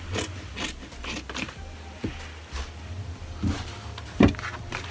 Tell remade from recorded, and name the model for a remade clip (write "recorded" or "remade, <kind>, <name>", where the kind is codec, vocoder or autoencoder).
recorded